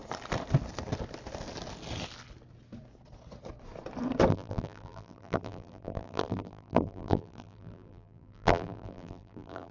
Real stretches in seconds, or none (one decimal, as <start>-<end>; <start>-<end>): 0.0-4.3